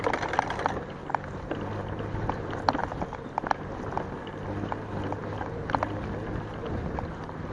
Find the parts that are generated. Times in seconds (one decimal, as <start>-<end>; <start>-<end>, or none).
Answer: none